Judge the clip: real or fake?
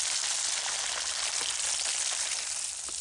real